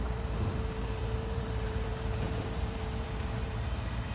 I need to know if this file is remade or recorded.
remade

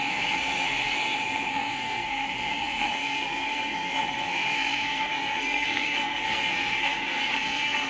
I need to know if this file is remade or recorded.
remade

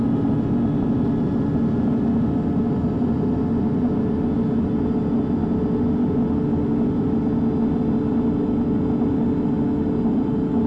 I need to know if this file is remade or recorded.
recorded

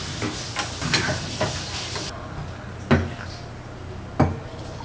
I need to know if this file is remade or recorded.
recorded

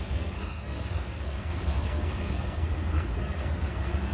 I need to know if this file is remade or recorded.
remade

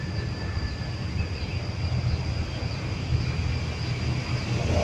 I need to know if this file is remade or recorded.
recorded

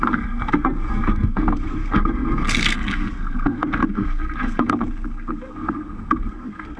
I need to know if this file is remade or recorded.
remade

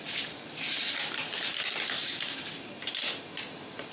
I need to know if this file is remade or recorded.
remade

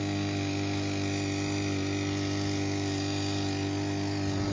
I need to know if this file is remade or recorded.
recorded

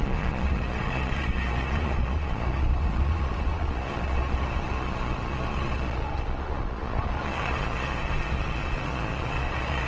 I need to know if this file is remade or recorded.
remade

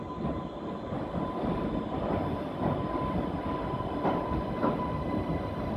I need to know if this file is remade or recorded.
recorded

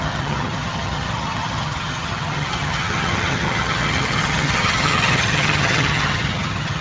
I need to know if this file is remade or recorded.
remade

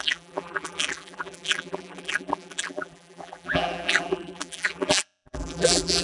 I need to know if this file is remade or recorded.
remade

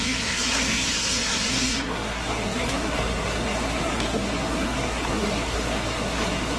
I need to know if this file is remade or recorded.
remade